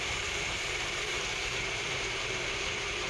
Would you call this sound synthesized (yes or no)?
yes